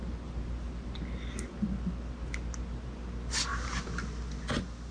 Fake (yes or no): no